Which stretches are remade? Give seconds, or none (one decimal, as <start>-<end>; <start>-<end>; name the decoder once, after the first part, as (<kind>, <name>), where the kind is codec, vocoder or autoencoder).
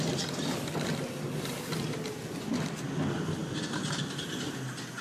none